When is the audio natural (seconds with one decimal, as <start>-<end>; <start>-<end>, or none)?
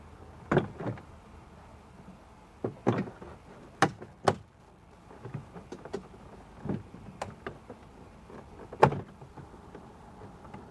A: 0.0-10.7